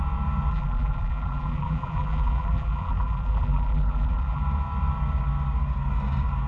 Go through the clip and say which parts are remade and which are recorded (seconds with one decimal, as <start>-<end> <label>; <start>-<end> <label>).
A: 0.0-0.5 recorded; 0.5-4.4 remade; 4.4-6.5 recorded